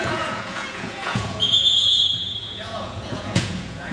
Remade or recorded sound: remade